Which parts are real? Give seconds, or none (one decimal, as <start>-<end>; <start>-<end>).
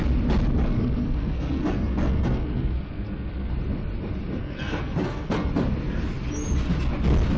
0.0-0.4; 3.5-4.4; 5.5-7.4